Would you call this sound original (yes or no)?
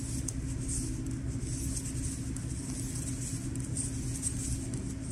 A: yes